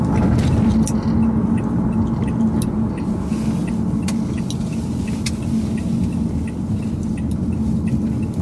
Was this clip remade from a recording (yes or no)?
no